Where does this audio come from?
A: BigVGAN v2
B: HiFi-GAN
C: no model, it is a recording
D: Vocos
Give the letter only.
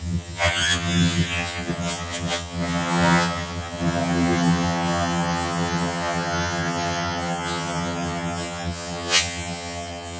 B